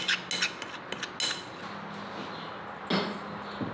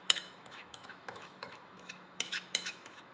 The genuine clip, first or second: first